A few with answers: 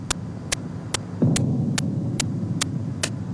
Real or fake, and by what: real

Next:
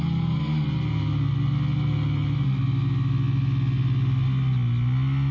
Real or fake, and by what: real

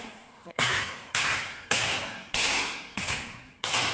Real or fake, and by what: fake, codec, SNAC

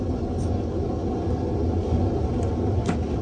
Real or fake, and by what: real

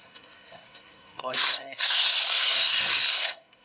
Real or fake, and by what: fake, codec, SNAC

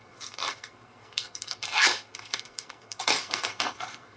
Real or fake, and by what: fake, codec, SNAC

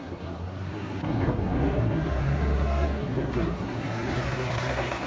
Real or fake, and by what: fake, codec, SNAC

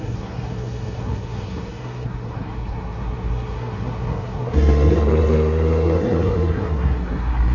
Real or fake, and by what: fake, codec, SNAC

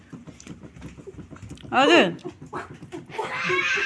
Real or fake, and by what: real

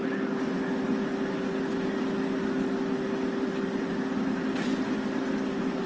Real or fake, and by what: real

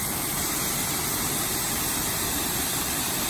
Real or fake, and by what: real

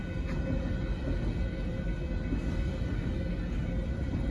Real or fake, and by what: real